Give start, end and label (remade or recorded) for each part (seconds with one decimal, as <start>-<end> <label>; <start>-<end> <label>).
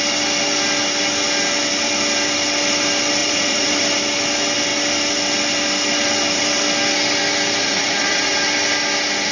0.0-3.2 recorded; 3.2-3.7 remade; 3.7-7.6 recorded; 7.6-8.3 remade; 8.3-9.3 recorded